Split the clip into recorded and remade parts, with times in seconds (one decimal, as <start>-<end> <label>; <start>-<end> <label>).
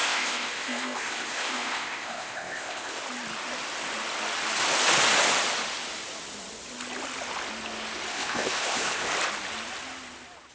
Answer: 0.0-3.0 remade; 3.0-8.1 recorded; 8.1-9.1 remade; 9.1-10.5 recorded